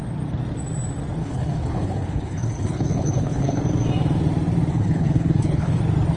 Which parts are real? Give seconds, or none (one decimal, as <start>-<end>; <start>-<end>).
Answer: 0.0-1.2; 3.6-4.7; 5.8-6.2